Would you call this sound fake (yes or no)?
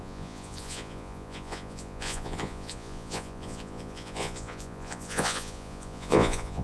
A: yes